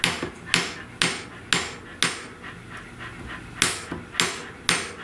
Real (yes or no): yes